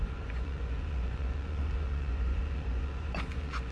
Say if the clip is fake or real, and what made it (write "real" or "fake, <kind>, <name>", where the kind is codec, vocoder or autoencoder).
fake, vocoder, Vocos